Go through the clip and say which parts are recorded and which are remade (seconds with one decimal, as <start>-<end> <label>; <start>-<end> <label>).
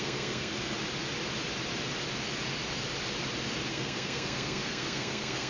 0.0-0.5 remade; 0.5-3.7 recorded; 3.7-5.5 remade